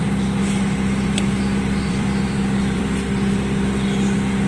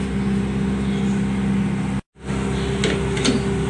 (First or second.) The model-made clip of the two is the first